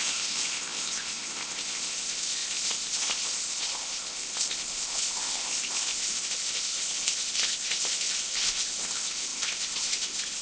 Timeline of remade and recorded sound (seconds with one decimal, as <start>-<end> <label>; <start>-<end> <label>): 0.0-10.4 remade

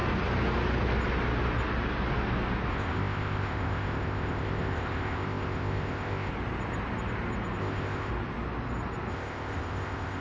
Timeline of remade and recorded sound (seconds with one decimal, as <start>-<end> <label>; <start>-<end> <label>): 0.0-2.7 recorded; 2.7-6.3 remade; 6.3-7.6 recorded; 7.6-8.1 remade; 8.1-9.1 recorded; 9.1-10.2 remade